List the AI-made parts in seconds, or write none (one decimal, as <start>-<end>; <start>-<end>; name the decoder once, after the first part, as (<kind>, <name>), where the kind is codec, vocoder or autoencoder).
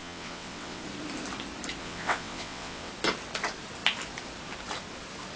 0.0-0.8 (vocoder, WaveNeXt); 1.8-2.9